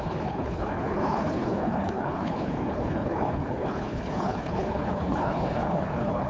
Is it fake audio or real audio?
fake